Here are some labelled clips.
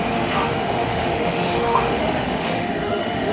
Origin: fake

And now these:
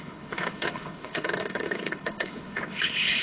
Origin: fake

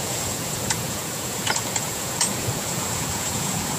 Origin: fake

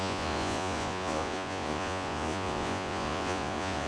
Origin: fake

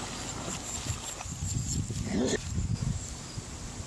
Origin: real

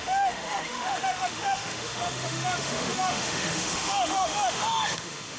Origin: fake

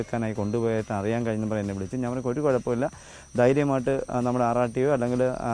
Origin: real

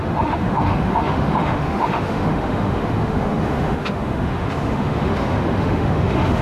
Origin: fake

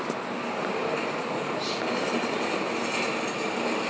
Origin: real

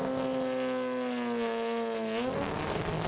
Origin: real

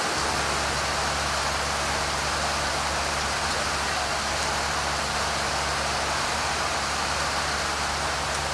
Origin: real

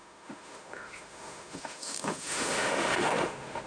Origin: fake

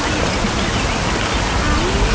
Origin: real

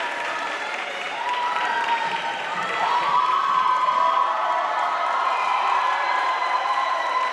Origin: fake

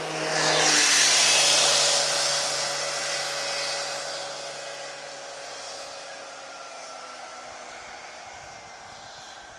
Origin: real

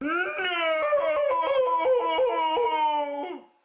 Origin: real